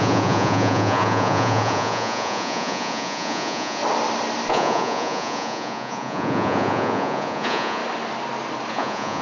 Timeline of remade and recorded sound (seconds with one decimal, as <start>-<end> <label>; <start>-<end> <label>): 0.0-3.8 remade; 3.8-4.5 recorded; 4.5-7.8 remade; 7.8-8.7 recorded; 8.7-9.2 remade